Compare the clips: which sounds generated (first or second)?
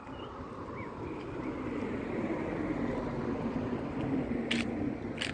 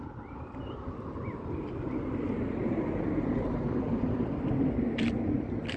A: second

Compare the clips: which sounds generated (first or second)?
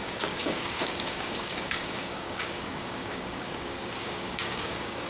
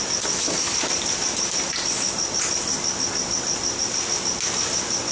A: first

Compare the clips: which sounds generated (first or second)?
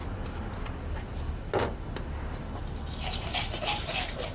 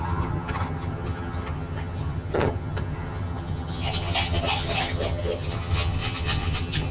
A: second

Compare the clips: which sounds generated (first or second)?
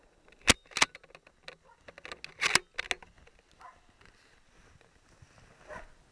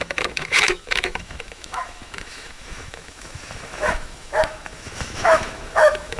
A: second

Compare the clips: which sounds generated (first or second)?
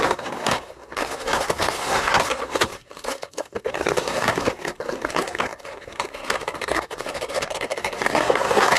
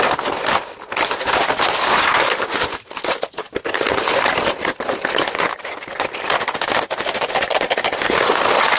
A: first